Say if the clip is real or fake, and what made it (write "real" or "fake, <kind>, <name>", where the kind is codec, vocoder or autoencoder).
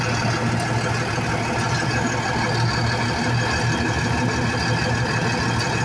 real